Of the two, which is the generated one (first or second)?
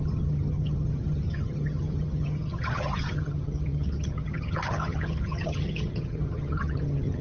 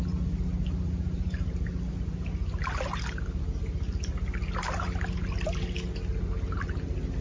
first